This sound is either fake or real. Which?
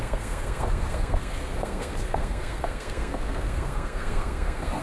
fake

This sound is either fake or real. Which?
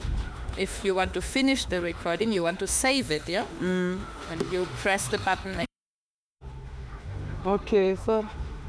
fake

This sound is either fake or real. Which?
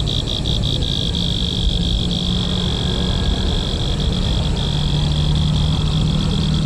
real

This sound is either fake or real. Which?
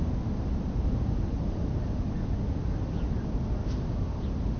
real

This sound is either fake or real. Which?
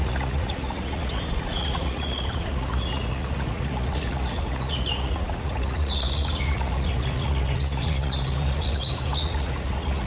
fake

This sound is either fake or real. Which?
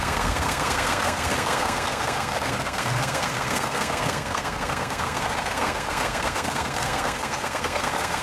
fake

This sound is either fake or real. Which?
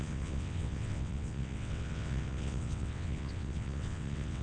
fake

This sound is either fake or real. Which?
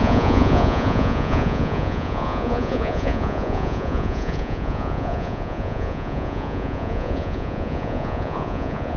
fake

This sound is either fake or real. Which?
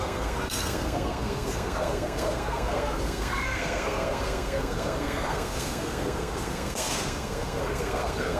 fake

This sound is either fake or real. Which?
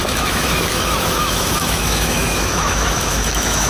fake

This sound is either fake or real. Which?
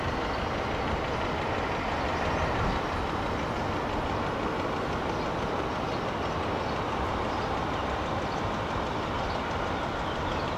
real